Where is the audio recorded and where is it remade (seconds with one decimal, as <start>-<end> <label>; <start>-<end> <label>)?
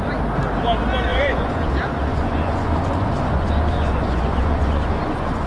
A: 0.0-1.1 recorded; 1.1-1.7 remade; 1.7-2.1 recorded; 2.1-5.5 remade